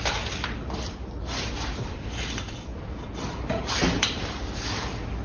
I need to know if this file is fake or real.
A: real